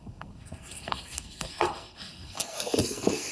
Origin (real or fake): fake